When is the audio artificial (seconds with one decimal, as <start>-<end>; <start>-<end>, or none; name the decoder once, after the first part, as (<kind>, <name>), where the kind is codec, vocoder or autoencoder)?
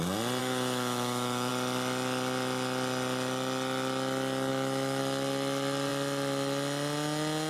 0.4-1.5 (autoencoder, DAC-VAE); 4.5-5.0